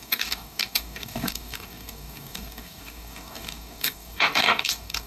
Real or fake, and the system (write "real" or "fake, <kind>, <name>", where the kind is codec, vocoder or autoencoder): fake, codec, DAC